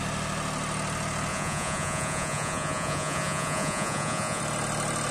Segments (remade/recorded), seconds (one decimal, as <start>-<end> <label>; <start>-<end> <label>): 0.0-1.3 recorded; 1.3-4.4 remade; 4.4-5.1 recorded

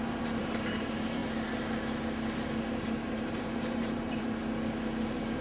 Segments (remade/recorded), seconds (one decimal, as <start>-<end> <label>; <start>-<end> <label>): 0.0-1.2 remade; 1.2-2.6 recorded; 2.6-4.4 remade; 4.4-5.4 recorded

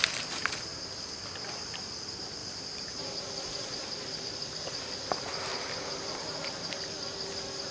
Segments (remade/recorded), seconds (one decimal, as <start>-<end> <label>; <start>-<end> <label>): 0.0-2.4 recorded; 2.4-4.5 remade; 4.5-7.7 recorded

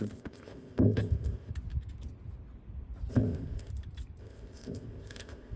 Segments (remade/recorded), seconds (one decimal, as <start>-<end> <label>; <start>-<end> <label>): 0.0-1.5 remade; 1.5-3.1 recorded; 3.1-3.7 remade; 3.7-4.2 recorded; 4.2-5.6 remade

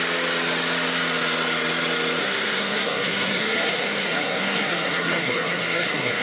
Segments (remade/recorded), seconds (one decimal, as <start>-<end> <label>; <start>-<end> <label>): 0.0-2.2 recorded; 2.2-6.2 remade